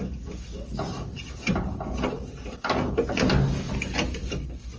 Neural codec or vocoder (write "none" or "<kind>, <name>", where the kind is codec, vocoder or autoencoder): none